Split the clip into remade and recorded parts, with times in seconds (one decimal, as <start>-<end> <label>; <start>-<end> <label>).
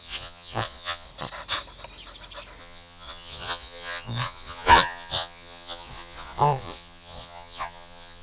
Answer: 0.0-1.1 remade; 1.1-2.6 recorded; 2.6-8.2 remade